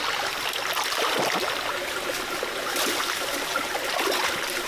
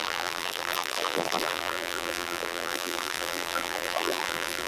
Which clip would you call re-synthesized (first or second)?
second